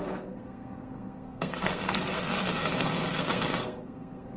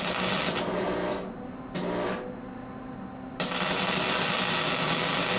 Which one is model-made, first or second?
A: first